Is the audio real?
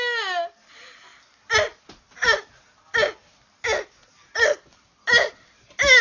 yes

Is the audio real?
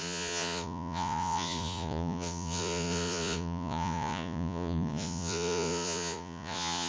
no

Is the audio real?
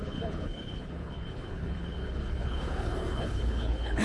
no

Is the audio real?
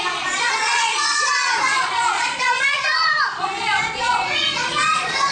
no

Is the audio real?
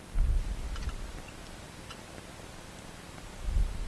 yes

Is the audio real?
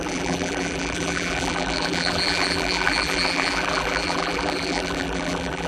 no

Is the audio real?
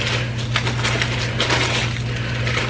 yes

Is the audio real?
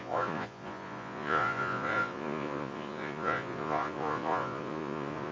no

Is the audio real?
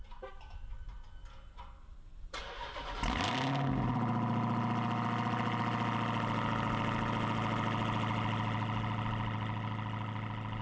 yes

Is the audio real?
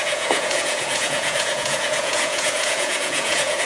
no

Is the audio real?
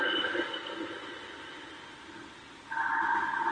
yes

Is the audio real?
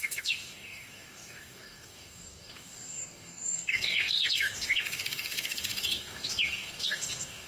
no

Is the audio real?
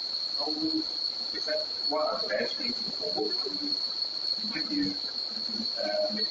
yes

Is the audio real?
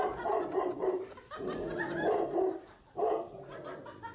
yes